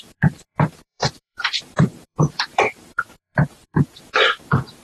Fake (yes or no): yes